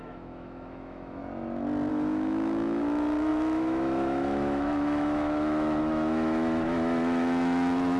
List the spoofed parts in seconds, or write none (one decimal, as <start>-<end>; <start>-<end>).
0.0-1.2; 1.9-8.0